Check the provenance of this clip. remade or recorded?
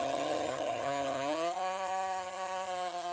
remade